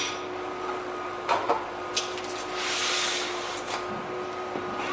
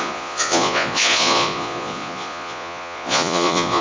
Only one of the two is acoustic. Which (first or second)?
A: first